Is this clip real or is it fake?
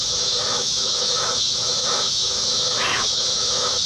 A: fake